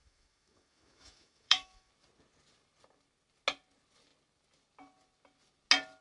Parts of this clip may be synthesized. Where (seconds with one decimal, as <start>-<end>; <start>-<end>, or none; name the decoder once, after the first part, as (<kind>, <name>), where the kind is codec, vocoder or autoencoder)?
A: 0.0-1.9 (autoencoder, DAC-VAE)